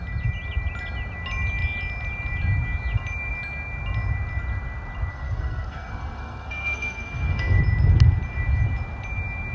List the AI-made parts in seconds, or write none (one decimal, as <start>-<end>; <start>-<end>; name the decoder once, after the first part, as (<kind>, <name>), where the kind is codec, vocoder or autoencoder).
5.1-7.6 (codec, SNAC)